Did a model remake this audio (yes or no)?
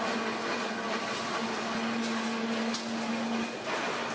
no